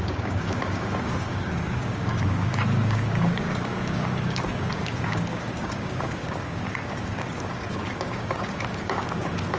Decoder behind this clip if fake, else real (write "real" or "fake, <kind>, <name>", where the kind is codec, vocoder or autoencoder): fake, codec, DAC